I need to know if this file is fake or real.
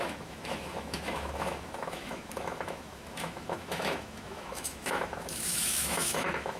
fake